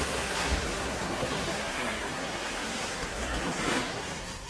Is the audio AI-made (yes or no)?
yes